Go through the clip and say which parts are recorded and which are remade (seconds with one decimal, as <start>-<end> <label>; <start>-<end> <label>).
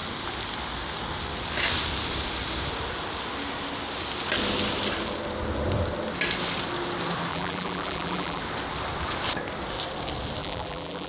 0.0-7.3 recorded; 7.3-8.4 remade; 8.4-10.4 recorded; 10.4-11.1 remade